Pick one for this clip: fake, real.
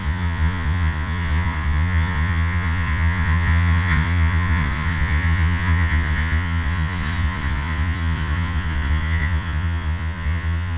fake